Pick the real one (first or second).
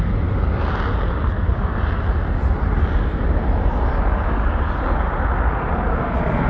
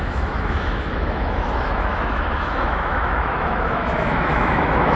first